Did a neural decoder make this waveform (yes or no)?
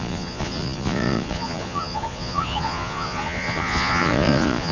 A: yes